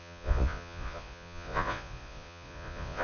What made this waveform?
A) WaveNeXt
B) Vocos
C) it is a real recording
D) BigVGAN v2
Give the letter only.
B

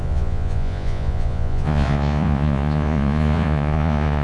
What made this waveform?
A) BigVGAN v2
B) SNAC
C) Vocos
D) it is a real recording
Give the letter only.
C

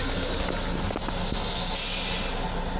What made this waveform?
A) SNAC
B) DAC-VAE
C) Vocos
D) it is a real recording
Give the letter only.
D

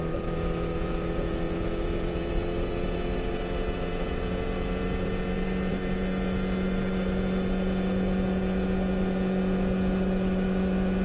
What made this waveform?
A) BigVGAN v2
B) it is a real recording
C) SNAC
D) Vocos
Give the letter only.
D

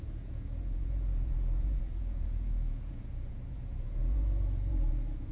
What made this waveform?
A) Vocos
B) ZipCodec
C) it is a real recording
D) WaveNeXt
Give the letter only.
A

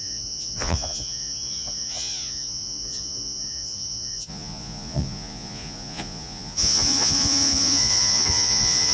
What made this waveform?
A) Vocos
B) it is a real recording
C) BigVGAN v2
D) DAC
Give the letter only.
A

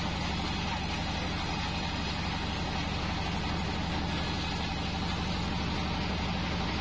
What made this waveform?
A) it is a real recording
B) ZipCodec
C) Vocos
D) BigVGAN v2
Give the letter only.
A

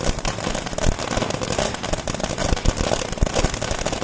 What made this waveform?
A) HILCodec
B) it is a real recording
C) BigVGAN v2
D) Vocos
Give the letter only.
B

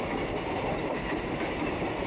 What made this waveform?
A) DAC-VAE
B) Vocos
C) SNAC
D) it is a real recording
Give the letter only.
D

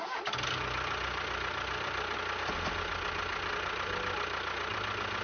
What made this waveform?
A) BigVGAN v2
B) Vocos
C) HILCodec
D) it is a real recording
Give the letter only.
D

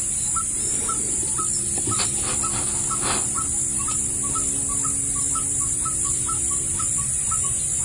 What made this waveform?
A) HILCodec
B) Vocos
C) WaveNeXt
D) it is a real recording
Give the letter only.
D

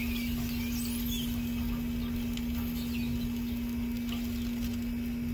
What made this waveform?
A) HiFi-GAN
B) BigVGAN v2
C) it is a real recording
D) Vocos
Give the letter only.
C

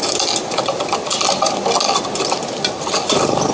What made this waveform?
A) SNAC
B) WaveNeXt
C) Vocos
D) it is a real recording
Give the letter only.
D